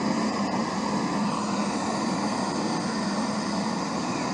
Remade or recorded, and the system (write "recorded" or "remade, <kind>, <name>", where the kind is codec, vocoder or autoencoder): recorded